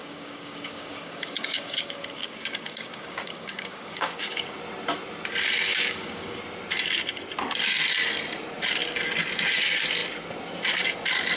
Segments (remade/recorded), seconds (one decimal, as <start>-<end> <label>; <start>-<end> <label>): 0.0-4.6 remade; 4.6-5.7 recorded; 5.7-6.4 remade; 6.4-11.4 recorded